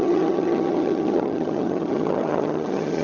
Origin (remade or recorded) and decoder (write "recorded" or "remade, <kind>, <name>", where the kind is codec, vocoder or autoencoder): remade, vocoder, HiFi-GAN